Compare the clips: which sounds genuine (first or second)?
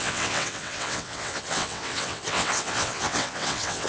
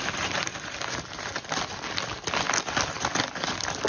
second